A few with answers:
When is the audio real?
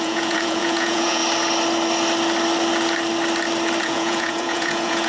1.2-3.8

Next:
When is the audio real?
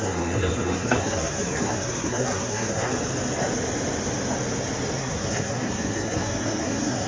2.9-5.0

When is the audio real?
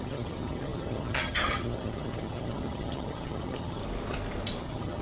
3.8-4.6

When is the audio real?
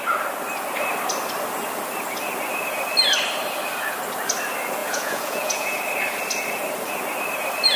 0.0-4.8; 5.8-7.8